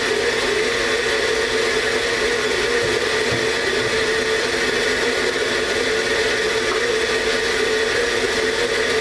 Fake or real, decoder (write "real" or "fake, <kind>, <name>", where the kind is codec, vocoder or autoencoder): real